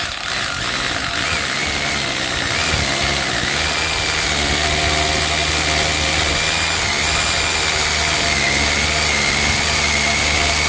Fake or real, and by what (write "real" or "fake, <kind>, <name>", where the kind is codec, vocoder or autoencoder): real